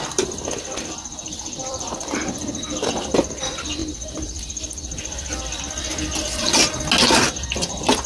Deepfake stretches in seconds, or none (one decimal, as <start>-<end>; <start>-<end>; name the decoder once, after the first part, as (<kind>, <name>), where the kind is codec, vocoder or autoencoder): 1.6-2.4 (vocoder, BigVGAN v2); 3.8-5.6